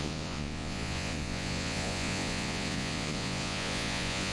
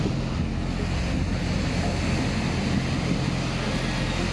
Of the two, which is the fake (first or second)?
first